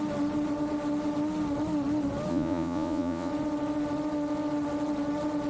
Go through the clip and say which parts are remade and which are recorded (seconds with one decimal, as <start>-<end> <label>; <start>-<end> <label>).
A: 0.0-2.3 recorded; 2.3-3.3 remade; 3.3-5.5 recorded